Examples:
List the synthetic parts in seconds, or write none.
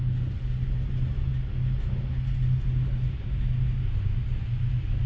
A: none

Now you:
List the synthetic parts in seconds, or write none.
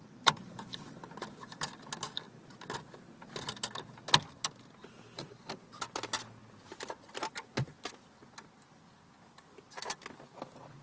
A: 0.0-0.8 (vocoder, BigVGAN v2); 4.8-5.4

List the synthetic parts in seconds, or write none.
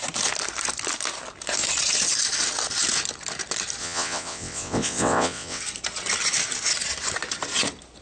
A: 3.8-5.6 (vocoder, WaveNeXt)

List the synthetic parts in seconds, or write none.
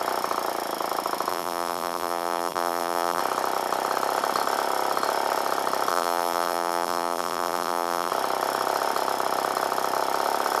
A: 1.3-3.2 (vocoder, BigVGAN v2); 5.9-8.1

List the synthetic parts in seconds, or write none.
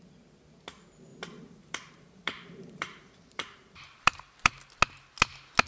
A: 1.1-4.5 (vocoder, BigVGAN v2)